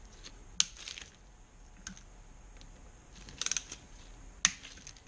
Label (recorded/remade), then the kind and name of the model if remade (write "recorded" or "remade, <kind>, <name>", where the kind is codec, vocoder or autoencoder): recorded